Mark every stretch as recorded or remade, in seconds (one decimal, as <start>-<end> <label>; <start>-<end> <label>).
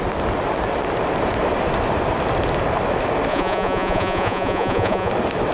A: 0.0-3.3 recorded; 3.3-5.1 remade; 5.1-5.5 recorded